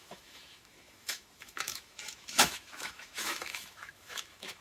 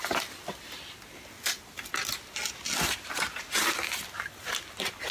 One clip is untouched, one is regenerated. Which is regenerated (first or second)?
first